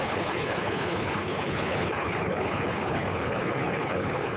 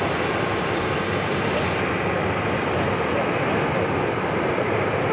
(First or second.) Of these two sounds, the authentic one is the second